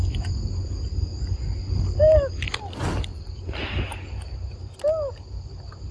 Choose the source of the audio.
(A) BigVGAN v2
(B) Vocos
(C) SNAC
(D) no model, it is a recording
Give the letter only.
D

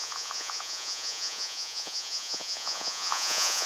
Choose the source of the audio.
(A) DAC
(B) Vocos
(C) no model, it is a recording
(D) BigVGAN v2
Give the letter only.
B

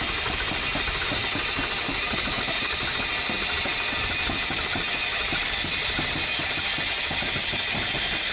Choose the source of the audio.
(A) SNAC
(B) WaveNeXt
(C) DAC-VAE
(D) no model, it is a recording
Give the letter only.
D